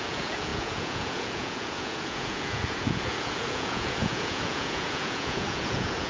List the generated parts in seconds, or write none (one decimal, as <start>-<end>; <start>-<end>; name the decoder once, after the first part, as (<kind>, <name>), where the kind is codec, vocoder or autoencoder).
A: 0.0-6.1 (vocoder, Vocos)

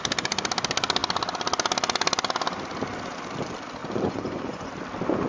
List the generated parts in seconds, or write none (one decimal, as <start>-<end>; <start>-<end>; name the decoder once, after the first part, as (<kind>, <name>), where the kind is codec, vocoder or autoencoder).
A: 3.8-4.7 (vocoder, Vocos)